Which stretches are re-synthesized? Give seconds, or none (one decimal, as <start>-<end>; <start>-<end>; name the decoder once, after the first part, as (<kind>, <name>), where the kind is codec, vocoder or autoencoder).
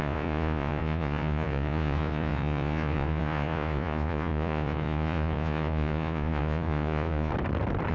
0.0-7.3 (vocoder, Vocos)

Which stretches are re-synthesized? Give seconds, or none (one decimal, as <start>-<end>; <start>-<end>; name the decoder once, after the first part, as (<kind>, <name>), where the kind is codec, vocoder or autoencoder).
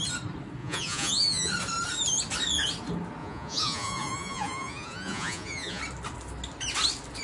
0.6-1.5 (vocoder, Vocos); 3.2-5.8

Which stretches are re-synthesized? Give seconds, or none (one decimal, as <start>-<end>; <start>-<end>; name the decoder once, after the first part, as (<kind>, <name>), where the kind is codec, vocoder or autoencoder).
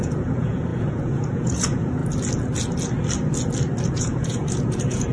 0.0-2.0 (vocoder, Vocos); 3.9-5.1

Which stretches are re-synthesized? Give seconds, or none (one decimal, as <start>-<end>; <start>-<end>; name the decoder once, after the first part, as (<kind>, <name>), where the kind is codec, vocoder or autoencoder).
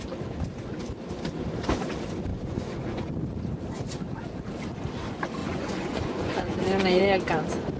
2.3-3.1 (vocoder, Vocos); 5.4-7.0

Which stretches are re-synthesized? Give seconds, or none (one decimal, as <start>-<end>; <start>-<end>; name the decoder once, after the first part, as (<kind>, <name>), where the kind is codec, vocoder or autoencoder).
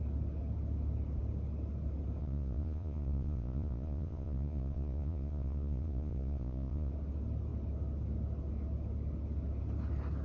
2.2-6.9 (vocoder, Vocos)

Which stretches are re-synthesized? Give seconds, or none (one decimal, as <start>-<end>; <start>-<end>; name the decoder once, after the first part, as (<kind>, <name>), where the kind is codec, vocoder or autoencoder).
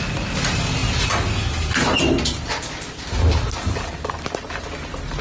none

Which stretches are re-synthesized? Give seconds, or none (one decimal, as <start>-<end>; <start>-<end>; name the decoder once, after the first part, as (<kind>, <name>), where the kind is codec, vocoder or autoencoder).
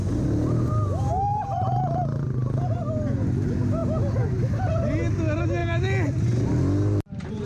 none